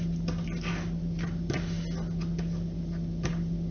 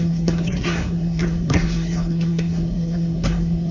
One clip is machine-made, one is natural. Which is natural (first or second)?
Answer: first